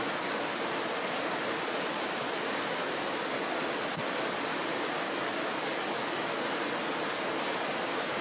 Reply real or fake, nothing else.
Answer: real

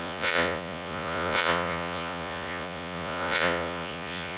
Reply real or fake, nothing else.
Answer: fake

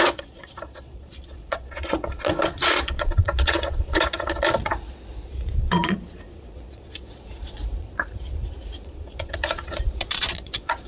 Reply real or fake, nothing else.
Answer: fake